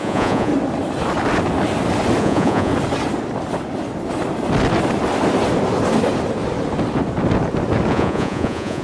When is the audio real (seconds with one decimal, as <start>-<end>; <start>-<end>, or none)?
0.5-2.2; 2.7-7.9